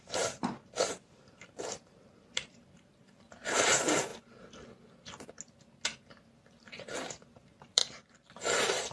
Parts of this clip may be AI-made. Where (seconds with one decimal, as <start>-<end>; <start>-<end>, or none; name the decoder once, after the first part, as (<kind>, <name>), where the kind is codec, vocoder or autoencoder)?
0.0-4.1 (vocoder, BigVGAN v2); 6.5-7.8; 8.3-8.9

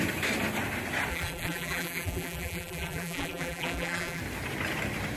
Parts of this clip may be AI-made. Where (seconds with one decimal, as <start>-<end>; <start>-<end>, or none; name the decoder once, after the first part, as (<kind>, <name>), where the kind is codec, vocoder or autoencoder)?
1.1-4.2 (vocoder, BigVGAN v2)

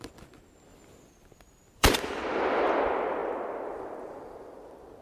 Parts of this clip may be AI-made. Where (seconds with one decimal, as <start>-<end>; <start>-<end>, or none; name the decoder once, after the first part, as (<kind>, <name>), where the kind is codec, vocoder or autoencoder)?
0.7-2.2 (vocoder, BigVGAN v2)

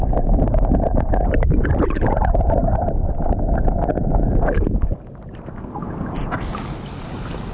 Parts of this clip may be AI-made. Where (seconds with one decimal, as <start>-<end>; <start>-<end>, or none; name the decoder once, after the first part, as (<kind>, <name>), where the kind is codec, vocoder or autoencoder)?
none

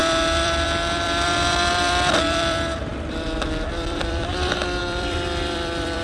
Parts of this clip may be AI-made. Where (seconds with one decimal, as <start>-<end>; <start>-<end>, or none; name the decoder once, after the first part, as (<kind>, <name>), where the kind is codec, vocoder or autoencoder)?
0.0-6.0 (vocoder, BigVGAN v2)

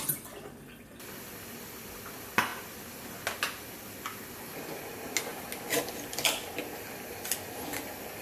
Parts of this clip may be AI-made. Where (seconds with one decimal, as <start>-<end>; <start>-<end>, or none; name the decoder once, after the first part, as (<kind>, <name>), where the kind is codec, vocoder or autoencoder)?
none

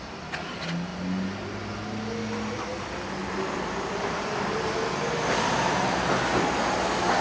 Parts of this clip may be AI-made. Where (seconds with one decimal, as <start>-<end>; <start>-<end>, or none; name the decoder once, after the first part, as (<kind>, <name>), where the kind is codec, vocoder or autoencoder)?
3.2-6.1 (vocoder, BigVGAN v2)